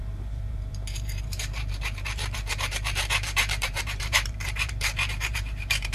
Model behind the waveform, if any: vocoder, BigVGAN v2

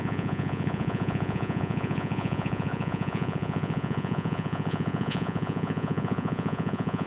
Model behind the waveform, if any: vocoder, Vocos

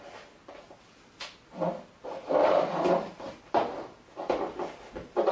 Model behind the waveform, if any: none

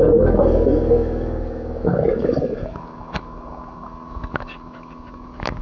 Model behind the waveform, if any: codec, DAC